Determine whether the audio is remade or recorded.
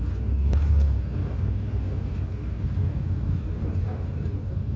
remade